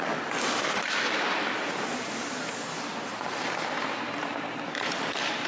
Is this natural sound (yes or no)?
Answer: yes